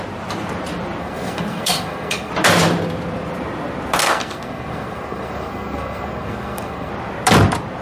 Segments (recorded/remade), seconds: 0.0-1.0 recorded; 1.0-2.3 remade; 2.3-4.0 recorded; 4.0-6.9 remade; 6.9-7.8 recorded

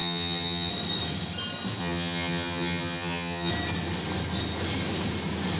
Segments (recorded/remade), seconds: 0.0-0.7 remade; 0.7-1.8 recorded; 1.8-3.5 remade; 3.5-5.6 recorded

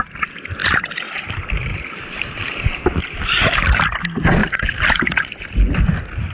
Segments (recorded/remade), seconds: 0.0-1.7 recorded; 1.7-3.0 remade; 3.0-4.4 recorded; 4.4-5.4 remade; 5.4-6.3 recorded

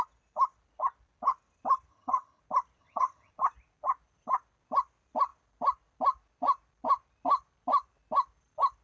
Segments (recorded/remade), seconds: 0.0-1.9 recorded; 1.9-2.4 remade; 2.4-2.8 recorded; 2.8-3.3 remade; 3.3-8.8 recorded

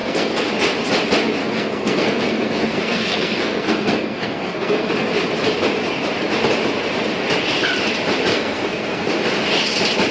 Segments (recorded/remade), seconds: 0.0-0.5 remade; 0.5-1.4 recorded; 1.4-4.9 remade; 4.9-8.3 recorded; 8.3-9.1 remade; 9.1-10.1 recorded

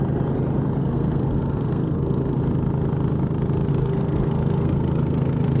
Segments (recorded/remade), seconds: 0.0-0.8 recorded; 0.8-2.4 remade; 2.4-3.7 recorded; 3.7-5.6 remade

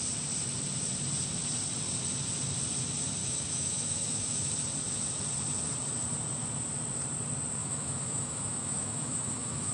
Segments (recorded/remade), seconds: 0.0-3.2 recorded; 3.2-4.5 remade; 4.5-7.6 recorded; 7.6-9.7 remade

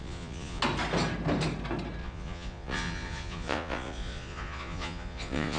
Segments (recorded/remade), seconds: 0.0-0.6 remade; 0.6-2.0 recorded; 2.0-5.6 remade